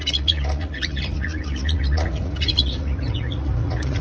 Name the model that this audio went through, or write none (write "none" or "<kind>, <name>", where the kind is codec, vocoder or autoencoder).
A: vocoder, Vocos